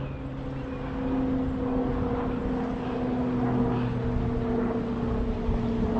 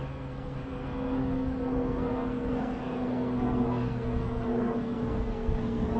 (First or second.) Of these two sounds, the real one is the first